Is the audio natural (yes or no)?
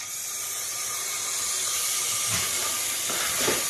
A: yes